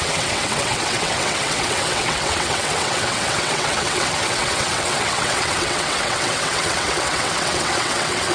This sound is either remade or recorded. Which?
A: remade